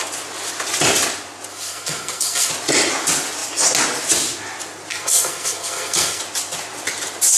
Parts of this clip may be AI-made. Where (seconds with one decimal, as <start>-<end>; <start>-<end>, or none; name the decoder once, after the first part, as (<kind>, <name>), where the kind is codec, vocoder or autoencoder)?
1.5-2.5 (codec, SNAC); 4.9-6.2